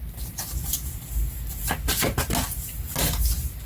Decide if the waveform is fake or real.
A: real